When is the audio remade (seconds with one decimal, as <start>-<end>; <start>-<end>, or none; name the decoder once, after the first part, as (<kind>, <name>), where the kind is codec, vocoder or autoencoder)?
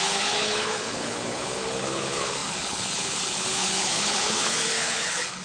0.0-5.4 (codec, HILCodec)